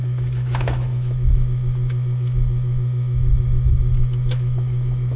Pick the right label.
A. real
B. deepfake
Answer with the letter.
B